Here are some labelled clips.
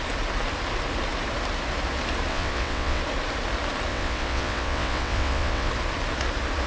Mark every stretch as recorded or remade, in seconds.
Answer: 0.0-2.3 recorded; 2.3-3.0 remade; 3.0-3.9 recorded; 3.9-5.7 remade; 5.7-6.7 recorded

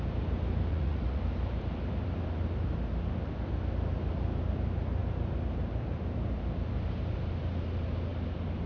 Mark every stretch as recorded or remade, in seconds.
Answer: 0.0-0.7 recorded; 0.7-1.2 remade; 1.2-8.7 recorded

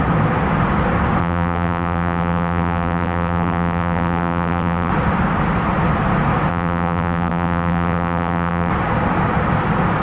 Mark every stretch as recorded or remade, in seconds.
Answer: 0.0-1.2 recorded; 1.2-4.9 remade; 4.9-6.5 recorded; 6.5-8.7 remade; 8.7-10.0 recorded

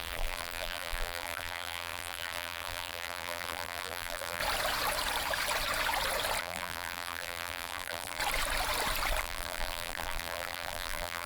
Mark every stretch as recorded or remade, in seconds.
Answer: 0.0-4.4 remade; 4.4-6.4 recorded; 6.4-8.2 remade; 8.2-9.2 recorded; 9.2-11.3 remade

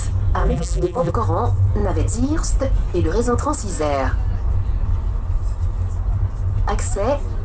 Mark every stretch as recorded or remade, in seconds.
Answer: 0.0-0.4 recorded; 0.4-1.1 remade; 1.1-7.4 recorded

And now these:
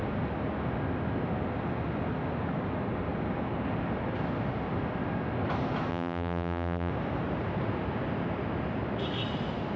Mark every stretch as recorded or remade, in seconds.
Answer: 0.0-5.9 recorded; 5.9-6.9 remade; 6.9-9.8 recorded